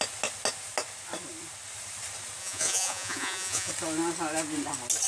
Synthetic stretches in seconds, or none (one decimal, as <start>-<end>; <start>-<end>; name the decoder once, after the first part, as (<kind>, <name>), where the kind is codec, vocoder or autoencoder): 2.4-3.7 (vocoder, Vocos)